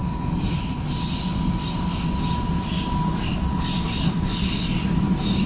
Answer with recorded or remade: recorded